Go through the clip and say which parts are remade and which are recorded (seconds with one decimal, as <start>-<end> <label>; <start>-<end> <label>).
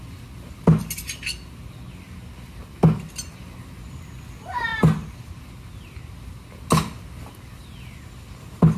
0.0-8.8 recorded